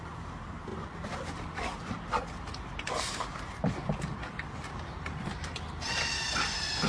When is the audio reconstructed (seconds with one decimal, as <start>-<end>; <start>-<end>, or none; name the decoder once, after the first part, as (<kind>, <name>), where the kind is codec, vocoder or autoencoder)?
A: none